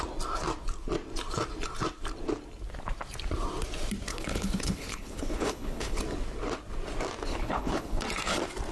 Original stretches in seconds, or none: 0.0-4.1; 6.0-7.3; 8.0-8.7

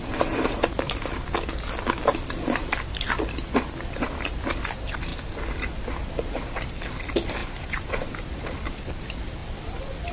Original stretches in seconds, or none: 0.0-7.4; 8.6-10.1

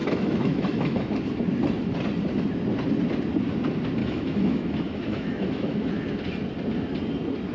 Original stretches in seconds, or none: 1.1-4.0; 5.9-7.5